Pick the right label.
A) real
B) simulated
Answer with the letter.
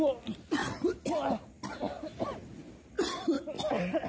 A